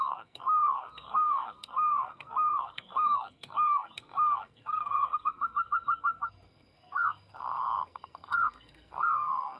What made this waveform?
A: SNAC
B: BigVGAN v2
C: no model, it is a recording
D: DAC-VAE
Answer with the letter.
A